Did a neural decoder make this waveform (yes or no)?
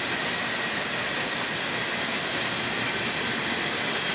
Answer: no